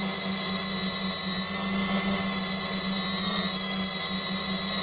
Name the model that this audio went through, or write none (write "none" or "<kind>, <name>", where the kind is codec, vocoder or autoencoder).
none